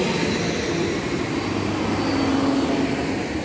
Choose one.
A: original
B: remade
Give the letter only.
A